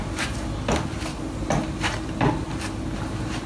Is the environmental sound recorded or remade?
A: recorded